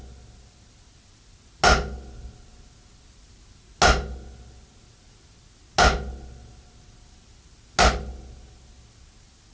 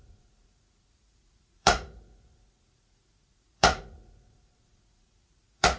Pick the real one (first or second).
first